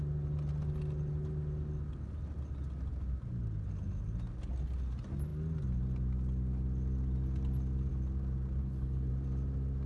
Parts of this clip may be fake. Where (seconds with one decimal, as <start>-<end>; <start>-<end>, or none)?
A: 8.6-9.1